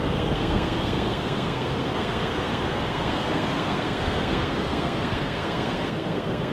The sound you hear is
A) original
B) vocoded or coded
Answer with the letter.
B